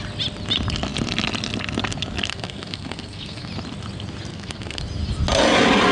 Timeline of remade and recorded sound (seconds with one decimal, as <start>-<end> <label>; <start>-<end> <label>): 0.0-2.3 recorded; 2.3-3.5 remade; 3.5-4.3 recorded; 4.3-4.8 remade; 4.8-5.9 recorded